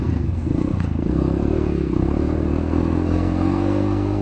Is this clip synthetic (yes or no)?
yes